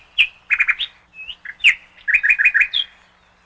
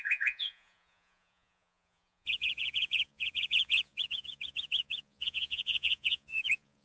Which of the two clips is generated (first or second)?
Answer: second